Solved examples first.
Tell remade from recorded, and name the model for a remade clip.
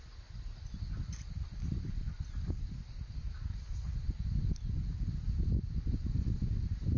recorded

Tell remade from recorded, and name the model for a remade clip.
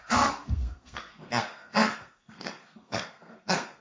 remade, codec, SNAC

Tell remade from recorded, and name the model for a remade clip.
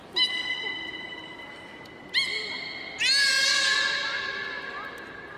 recorded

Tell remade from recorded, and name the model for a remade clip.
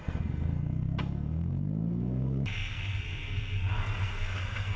remade, codec, SNAC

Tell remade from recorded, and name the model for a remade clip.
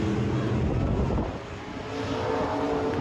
recorded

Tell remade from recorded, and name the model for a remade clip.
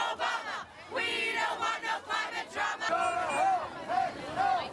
recorded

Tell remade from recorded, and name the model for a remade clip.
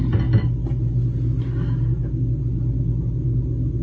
recorded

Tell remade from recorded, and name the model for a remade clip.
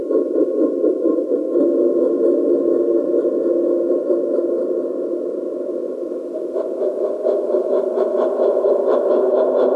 recorded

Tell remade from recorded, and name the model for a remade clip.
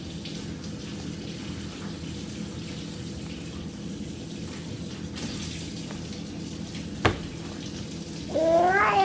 recorded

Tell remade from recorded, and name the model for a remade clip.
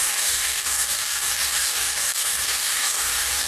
remade, codec, DAC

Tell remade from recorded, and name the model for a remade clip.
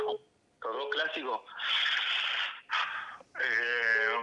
recorded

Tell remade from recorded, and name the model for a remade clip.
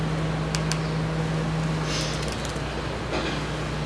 recorded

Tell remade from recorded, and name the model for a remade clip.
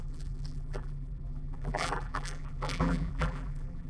remade, vocoder, BigVGAN v2